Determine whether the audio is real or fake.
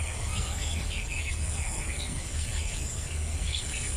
fake